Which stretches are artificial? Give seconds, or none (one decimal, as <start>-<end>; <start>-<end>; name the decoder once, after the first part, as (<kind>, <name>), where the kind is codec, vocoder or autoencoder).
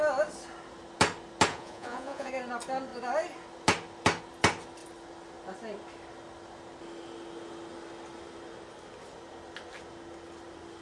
1.5-2.3 (vocoder, Vocos)